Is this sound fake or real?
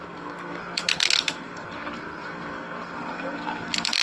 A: fake